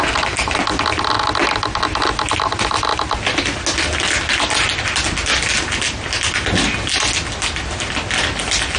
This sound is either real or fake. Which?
real